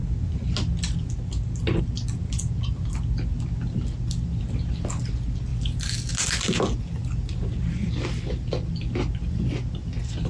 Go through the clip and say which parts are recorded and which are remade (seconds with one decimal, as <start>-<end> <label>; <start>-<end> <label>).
0.0-7.0 recorded; 7.0-7.8 remade; 7.8-10.3 recorded